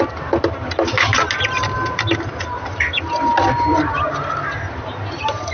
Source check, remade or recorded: recorded